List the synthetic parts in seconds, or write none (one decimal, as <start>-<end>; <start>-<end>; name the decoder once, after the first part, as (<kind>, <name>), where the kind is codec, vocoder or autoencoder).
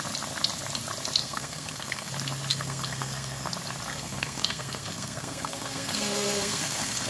1.2-2.1 (codec, SNAC); 2.5-3.5; 3.9-7.1